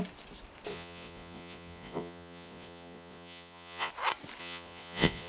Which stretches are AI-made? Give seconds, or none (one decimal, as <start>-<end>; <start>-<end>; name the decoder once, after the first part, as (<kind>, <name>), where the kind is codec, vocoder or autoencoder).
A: 0.7-3.9 (vocoder, Vocos); 4.4-5.3